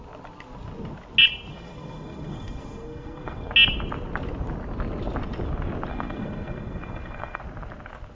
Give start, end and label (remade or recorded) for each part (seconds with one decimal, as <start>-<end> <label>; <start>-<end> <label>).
0.0-1.5 recorded; 1.5-3.5 remade; 3.5-5.9 recorded; 5.9-7.4 remade; 7.4-8.1 recorded